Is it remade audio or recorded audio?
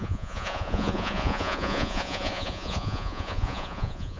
remade